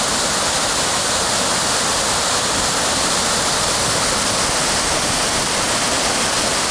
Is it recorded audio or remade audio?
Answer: recorded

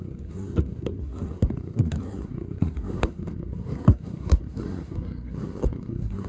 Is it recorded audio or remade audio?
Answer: remade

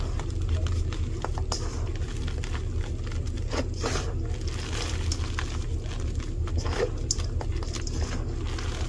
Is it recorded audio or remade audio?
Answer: recorded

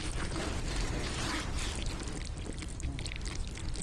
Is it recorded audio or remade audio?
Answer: recorded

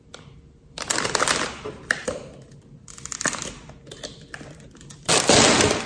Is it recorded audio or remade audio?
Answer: recorded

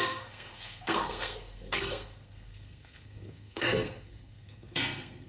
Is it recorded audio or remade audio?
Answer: remade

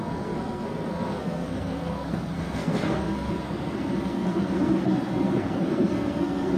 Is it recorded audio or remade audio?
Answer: remade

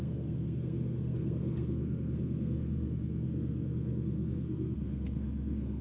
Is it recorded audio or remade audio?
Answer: remade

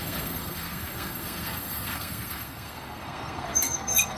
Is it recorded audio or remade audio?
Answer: remade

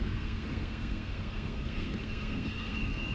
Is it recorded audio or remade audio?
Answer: remade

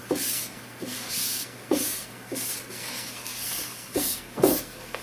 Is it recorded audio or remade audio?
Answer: remade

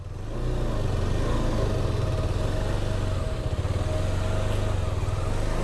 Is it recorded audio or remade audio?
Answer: recorded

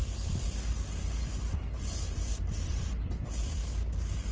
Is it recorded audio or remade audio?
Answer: recorded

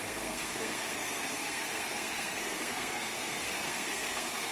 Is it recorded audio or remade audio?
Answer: remade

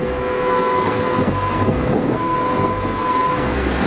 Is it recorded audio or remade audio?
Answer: remade